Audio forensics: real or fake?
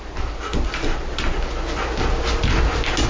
real